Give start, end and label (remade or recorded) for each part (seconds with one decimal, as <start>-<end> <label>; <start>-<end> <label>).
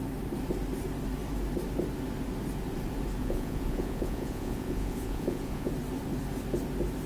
0.0-3.2 recorded; 3.2-5.7 remade; 5.7-7.1 recorded